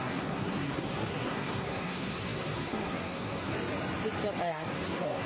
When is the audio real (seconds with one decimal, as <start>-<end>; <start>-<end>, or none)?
3.5-4.4